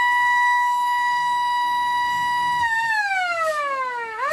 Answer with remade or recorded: remade